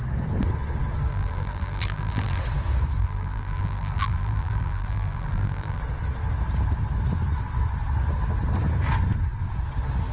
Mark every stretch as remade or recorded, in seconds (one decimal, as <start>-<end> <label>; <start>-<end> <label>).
0.0-1.1 recorded; 1.1-2.4 remade; 2.4-3.0 recorded; 3.0-5.8 remade; 5.8-10.1 recorded